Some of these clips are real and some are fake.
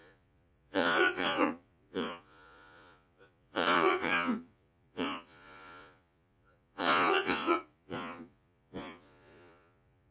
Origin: fake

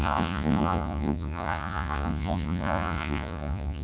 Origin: fake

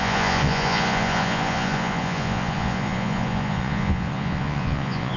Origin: fake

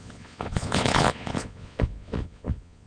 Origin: fake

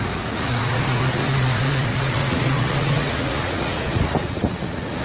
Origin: fake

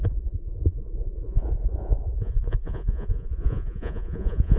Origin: fake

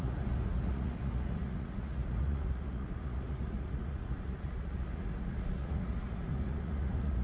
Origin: fake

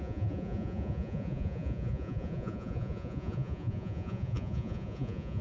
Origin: fake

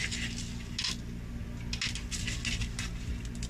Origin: real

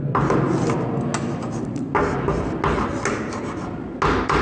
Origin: real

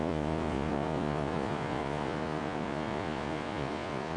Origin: fake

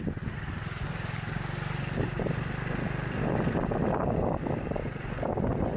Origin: real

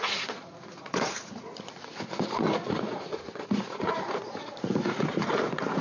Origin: fake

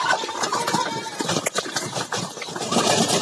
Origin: real